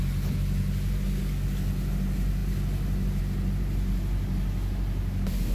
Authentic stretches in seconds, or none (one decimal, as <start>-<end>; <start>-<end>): 0.0-5.5